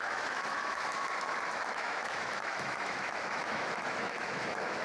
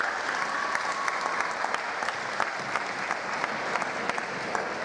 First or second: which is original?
second